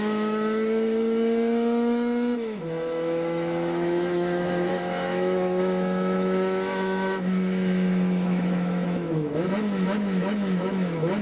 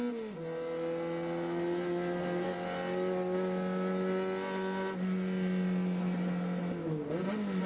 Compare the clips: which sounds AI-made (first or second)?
first